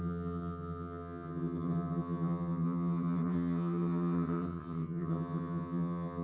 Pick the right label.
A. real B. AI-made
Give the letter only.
B